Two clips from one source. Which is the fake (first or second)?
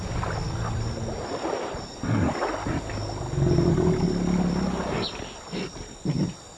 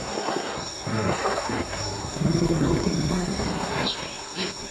second